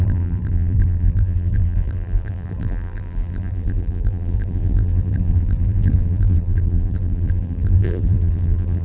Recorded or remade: remade